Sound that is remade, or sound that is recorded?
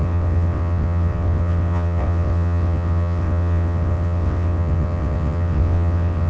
remade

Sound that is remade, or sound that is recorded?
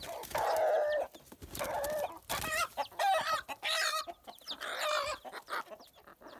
recorded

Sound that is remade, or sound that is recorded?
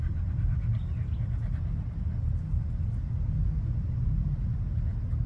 recorded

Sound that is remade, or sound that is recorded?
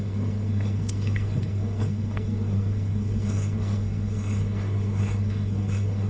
remade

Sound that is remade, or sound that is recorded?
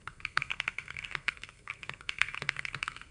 remade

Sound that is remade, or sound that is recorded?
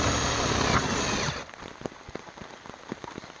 recorded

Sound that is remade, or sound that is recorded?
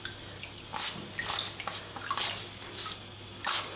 recorded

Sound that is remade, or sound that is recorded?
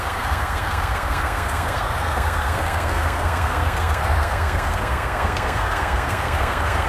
remade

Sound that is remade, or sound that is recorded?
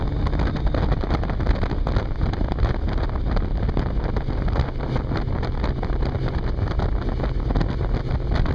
recorded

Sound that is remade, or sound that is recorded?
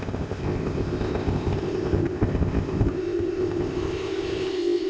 remade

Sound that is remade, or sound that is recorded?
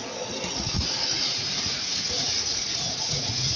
remade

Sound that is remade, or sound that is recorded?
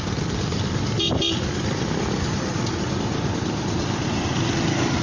recorded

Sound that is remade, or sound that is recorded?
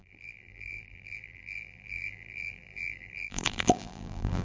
remade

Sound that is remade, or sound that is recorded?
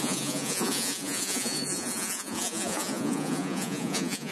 remade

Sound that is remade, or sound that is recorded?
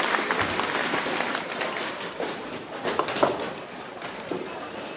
recorded